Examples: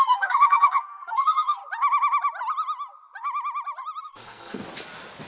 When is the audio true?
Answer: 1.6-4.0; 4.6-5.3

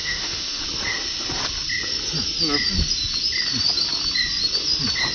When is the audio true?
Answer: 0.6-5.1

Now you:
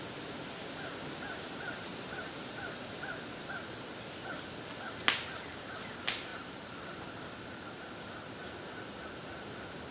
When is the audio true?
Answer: 0.0-1.9; 3.2-6.3; 7.0-9.9

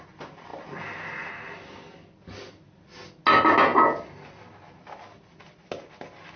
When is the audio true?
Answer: 0.0-6.4

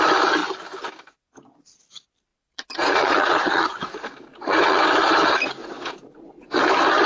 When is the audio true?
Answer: 0.0-2.3; 4.8-5.6; 6.6-7.1

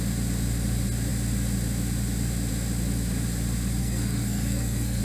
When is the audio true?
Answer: 0.0-3.8